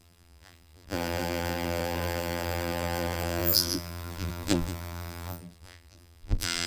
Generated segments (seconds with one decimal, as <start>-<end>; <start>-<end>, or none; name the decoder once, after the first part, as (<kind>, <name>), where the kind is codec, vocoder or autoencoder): 0.0-6.7 (vocoder, BigVGAN v2)